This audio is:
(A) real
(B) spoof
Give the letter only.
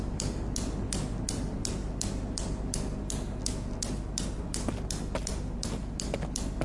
A